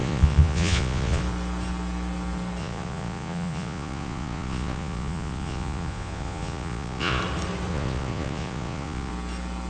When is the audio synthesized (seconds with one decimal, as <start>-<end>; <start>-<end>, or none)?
0.0-1.2; 2.6-7.2; 7.7-9.1